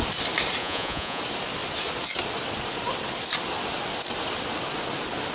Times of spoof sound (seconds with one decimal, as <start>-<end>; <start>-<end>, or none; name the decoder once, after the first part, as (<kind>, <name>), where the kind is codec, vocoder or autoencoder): 0.6-1.2 (vocoder, Vocos)